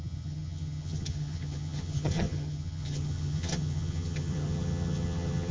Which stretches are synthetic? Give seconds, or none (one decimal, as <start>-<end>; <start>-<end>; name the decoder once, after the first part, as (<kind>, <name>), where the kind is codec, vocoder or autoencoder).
0.0-5.5 (vocoder, HiFi-GAN)